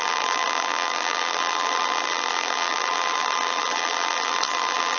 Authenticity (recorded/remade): remade